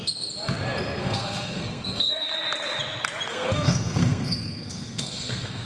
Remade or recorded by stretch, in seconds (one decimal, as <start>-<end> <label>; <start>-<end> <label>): 0.0-1.0 recorded; 1.0-2.3 remade; 2.3-3.3 recorded; 3.3-5.6 remade